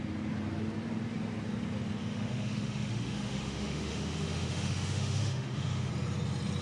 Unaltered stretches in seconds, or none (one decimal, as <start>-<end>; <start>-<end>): 0.0-2.0; 5.9-6.6